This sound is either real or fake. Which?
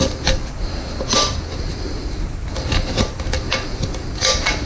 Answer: real